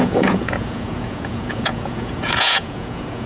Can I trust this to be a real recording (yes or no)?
no